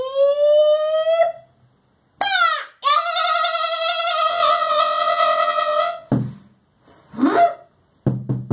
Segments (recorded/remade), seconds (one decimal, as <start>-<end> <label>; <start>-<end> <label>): 0.0-4.3 recorded; 4.3-6.1 remade; 6.1-8.5 recorded